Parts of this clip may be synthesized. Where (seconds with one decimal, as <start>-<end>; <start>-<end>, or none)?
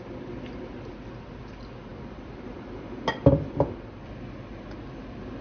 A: none